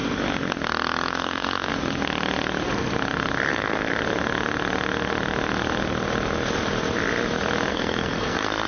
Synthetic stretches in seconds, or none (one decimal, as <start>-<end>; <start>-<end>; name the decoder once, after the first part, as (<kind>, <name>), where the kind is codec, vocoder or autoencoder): 1.1-1.7 (codec, SNAC); 3.5-3.9; 7.7-8.7